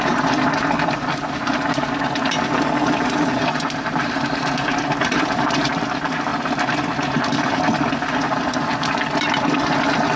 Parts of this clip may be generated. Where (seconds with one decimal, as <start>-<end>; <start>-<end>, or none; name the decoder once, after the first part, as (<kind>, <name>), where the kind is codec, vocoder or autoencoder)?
0.0-6.3 (vocoder, BigVGAN v2); 6.9-10.2